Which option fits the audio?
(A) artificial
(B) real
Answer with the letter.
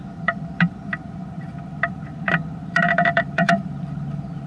A